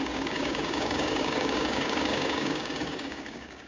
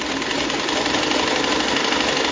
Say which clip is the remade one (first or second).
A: first